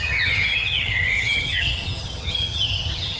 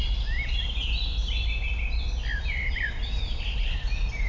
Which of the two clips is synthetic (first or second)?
first